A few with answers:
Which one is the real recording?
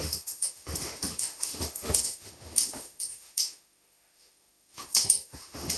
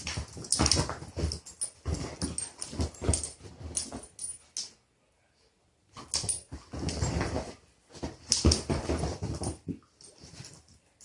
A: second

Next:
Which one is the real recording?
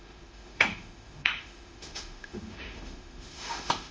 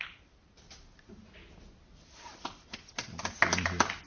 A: second